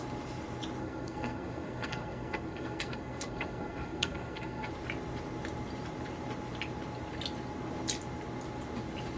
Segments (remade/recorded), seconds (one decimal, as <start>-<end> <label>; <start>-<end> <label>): 0.0-0.8 recorded; 0.8-4.7 remade; 4.7-9.2 recorded